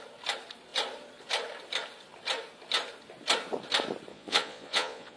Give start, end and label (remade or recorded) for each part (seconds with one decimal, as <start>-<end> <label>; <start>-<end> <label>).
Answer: 0.0-4.1 recorded; 4.1-5.2 remade